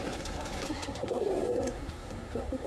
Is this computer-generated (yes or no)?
yes